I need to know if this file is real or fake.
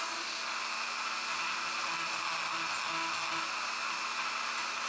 real